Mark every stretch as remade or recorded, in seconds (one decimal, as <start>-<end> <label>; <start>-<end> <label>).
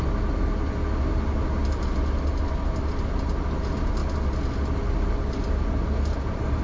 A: 0.0-6.6 recorded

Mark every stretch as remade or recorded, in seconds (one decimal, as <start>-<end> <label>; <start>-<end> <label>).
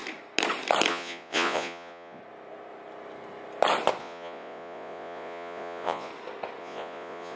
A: 0.0-0.9 recorded; 0.9-2.2 remade; 2.2-4.0 recorded; 4.0-6.1 remade; 6.1-6.6 recorded; 6.6-7.4 remade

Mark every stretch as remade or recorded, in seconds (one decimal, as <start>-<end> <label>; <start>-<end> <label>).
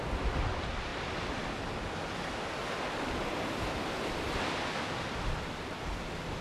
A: 0.0-6.4 recorded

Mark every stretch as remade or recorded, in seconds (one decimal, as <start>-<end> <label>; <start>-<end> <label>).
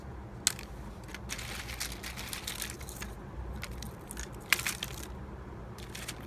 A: 0.0-6.3 recorded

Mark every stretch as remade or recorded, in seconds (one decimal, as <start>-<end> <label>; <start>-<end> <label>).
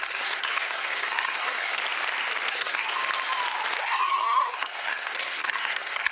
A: 0.0-1.8 remade; 1.8-2.5 recorded; 2.5-3.0 remade; 3.0-3.8 recorded; 3.8-6.1 remade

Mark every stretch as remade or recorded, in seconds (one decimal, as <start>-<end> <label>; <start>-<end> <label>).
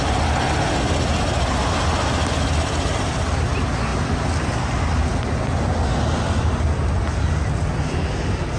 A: 0.0-8.6 recorded